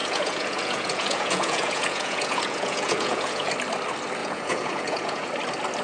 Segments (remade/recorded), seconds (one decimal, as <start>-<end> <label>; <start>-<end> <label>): 0.0-3.5 remade; 3.5-4.2 recorded; 4.2-5.3 remade; 5.3-5.8 recorded